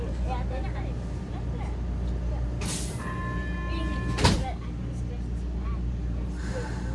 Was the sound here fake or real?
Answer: real